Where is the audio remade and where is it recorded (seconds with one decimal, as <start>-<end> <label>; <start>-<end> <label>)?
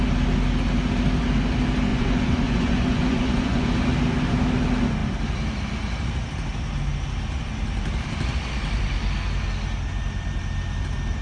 0.0-1.9 recorded; 1.9-3.7 remade; 3.7-11.2 recorded